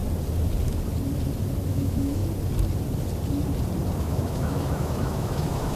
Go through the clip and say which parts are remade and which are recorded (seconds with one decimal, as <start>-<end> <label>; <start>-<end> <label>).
0.0-1.7 recorded; 1.7-2.2 remade; 2.2-4.0 recorded; 4.0-5.8 remade

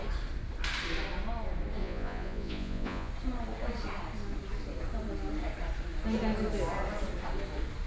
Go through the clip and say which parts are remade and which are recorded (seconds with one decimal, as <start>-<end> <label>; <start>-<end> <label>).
0.0-1.8 recorded; 1.8-3.1 remade; 3.1-7.9 recorded

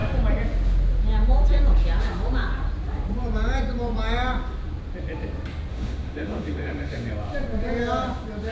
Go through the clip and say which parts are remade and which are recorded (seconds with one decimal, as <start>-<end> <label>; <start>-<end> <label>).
0.0-5.7 recorded; 5.7-7.1 remade; 7.1-8.5 recorded

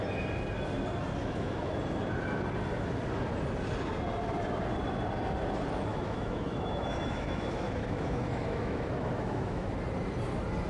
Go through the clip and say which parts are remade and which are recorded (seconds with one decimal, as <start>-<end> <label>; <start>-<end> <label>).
0.0-1.2 recorded; 1.2-1.8 remade; 1.8-5.9 recorded; 5.9-9.7 remade; 9.7-10.7 recorded

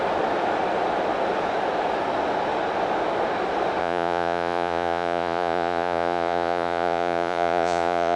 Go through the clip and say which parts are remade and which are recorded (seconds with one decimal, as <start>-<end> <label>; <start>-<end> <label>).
0.0-3.8 recorded; 3.8-8.2 remade

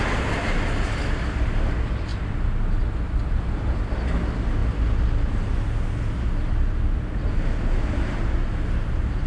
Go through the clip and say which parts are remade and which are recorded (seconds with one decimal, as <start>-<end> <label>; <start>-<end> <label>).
0.0-9.3 recorded